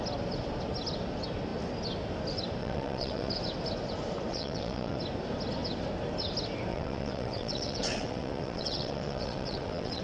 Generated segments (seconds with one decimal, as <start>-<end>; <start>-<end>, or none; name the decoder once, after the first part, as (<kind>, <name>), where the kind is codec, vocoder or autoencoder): 2.6-3.3 (vocoder, WaveNeXt); 4.3-5.0; 6.7-10.0

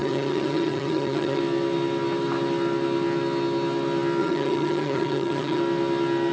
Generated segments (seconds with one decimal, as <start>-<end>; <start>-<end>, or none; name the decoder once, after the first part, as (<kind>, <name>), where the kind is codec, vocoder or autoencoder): 0.0-1.4 (vocoder, HiFi-GAN); 4.2-5.6

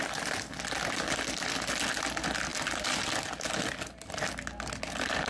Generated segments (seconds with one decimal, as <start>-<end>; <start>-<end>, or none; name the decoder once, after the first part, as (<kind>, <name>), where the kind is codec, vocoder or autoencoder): none

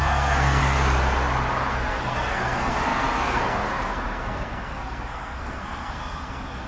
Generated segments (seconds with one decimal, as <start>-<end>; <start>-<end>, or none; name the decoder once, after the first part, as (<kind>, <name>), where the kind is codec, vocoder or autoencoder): 0.0-0.6 (codec, SNAC); 1.7-6.7

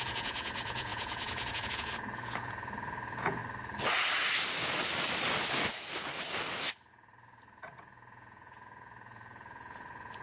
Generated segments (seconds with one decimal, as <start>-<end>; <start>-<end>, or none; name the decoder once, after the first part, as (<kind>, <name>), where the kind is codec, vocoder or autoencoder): 0.0-3.4 (vocoder, Vocos); 6.9-10.2

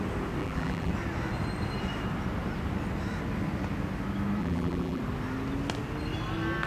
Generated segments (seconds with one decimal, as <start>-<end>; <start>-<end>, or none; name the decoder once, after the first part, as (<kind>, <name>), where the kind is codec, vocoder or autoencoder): 0.4-0.9 (vocoder, BigVGAN v2); 4.4-5.0